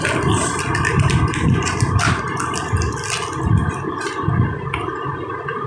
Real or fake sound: real